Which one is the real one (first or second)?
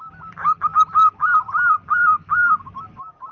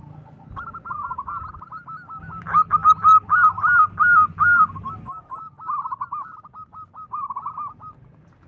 second